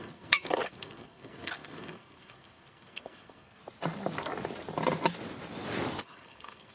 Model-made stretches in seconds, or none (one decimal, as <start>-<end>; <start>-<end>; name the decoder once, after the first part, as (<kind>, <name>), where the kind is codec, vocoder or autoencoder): 0.0-3.6 (codec, SNAC); 6.0-6.7

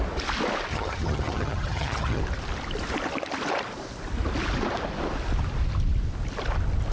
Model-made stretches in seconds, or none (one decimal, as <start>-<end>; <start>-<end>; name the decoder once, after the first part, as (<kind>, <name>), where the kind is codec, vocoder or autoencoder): 0.7-2.2 (vocoder, HiFi-GAN)